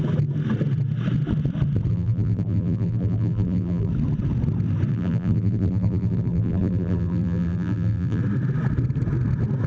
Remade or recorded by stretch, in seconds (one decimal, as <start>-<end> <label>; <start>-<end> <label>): 0.0-1.9 recorded; 1.9-3.9 remade; 3.9-4.9 recorded; 4.9-8.2 remade; 8.2-9.7 recorded